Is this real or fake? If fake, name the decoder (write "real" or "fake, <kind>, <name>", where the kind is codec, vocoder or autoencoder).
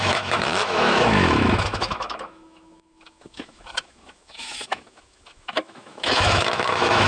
fake, autoencoder, DAC-VAE